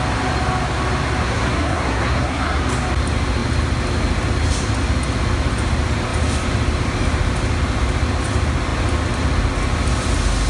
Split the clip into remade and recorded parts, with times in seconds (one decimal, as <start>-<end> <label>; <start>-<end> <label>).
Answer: 0.0-1.2 recorded; 1.2-2.6 remade; 2.6-10.5 recorded